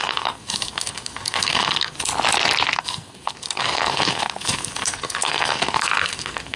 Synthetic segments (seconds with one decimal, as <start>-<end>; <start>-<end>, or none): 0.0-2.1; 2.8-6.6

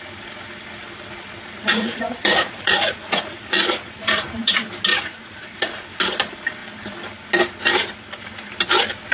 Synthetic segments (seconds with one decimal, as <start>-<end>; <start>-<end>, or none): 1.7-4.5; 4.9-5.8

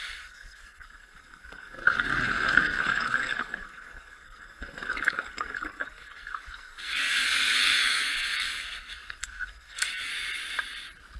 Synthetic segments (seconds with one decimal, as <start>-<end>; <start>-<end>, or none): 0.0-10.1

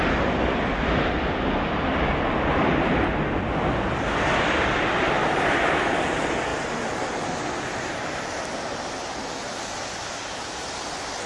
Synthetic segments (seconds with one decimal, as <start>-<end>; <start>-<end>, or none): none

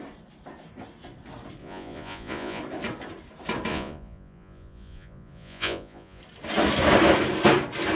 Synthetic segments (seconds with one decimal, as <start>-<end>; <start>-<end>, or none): 1.6-2.6; 3.7-6.2

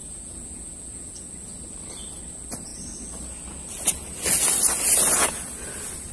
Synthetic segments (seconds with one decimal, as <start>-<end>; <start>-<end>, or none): 0.0-1.2

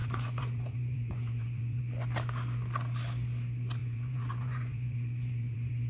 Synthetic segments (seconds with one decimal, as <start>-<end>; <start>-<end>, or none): 0.0-1.8; 3.8-5.9

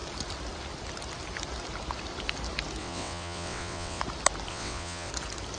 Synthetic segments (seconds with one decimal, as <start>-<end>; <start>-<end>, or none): 2.8-4.0; 4.5-5.1